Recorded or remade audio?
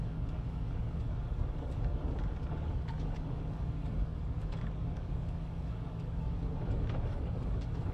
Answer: remade